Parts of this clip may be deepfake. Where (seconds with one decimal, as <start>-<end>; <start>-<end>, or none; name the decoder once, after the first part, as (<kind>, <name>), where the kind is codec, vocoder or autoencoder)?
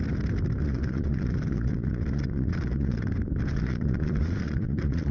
0.6-3.1 (vocoder, Vocos); 3.5-5.1